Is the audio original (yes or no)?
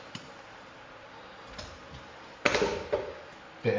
yes